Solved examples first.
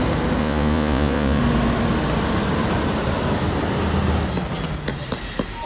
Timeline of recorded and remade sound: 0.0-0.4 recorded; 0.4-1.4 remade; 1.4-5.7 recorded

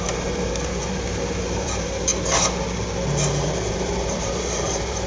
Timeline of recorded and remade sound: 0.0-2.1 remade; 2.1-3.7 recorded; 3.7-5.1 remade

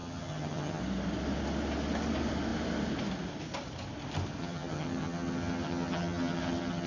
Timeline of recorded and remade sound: 0.0-0.8 remade; 0.8-4.4 recorded; 4.4-6.9 remade

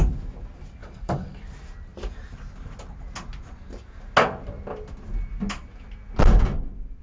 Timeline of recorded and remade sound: 0.0-0.8 recorded; 0.8-1.4 remade; 1.4-7.0 recorded

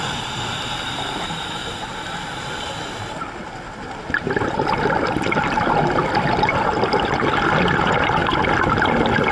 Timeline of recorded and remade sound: 0.0-1.6 remade; 1.6-2.5 recorded; 2.5-8.2 remade; 8.2-9.3 recorded

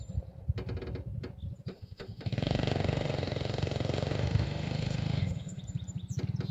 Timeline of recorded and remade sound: 0.0-1.7 recorded; 1.7-5.6 remade; 5.6-6.5 recorded

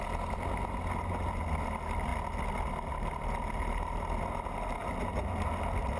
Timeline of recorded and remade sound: 0.0-6.0 recorded

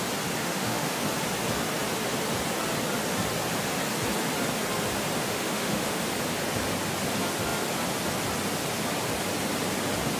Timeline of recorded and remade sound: 0.0-0.4 recorded; 0.4-1.0 remade; 1.0-5.2 recorded; 5.2-6.0 remade; 6.0-10.2 recorded